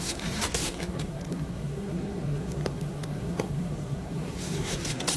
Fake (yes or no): yes